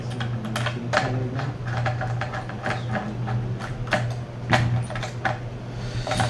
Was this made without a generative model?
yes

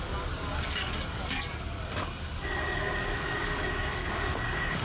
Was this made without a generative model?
no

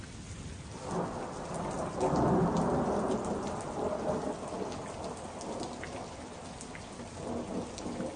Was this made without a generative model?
yes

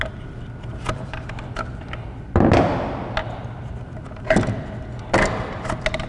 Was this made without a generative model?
yes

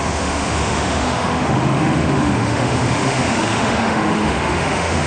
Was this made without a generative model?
no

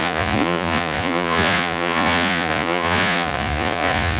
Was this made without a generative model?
no